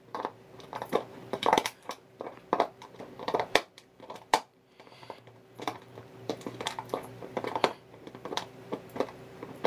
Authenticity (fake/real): fake